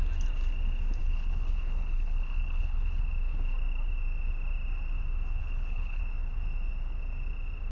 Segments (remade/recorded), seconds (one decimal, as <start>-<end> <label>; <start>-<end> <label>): 0.0-1.0 recorded; 1.0-3.0 remade; 3.0-5.4 recorded; 5.4-6.0 remade; 6.0-7.7 recorded